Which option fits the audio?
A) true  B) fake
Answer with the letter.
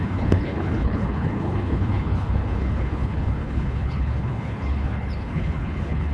B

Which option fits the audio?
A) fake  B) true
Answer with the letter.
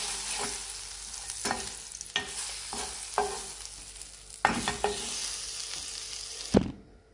B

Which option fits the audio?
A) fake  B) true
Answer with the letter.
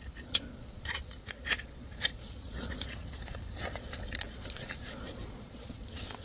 A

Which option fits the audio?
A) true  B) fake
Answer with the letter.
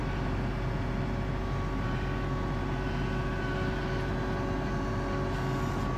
A